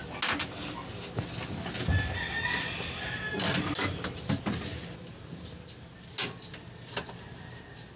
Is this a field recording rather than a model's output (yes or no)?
yes